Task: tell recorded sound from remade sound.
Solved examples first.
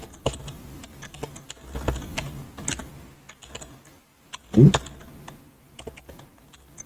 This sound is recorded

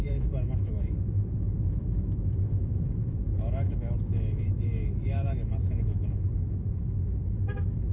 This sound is remade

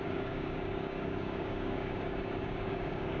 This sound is remade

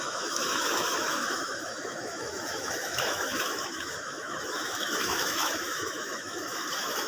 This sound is remade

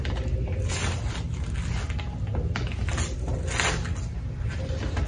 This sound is recorded